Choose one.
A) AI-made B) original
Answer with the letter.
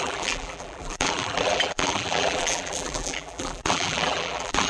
A